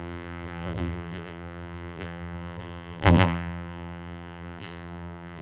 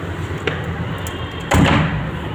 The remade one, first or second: first